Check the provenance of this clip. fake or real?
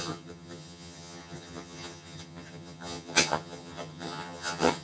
fake